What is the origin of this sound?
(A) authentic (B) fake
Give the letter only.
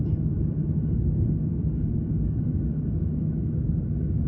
B